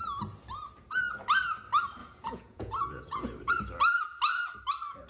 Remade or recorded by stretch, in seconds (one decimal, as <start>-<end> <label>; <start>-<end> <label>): 0.0-2.0 recorded; 2.0-3.5 remade; 3.5-5.1 recorded